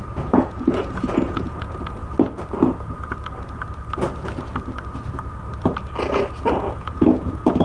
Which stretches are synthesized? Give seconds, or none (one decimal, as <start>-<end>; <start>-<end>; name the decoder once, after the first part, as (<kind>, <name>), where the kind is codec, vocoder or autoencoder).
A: 0.0-2.0 (vocoder, Vocos); 6.6-7.6